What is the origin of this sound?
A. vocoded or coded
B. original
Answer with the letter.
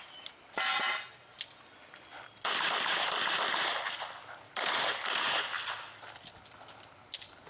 B